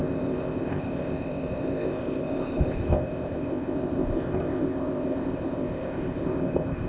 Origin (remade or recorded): remade